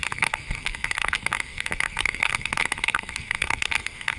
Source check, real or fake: fake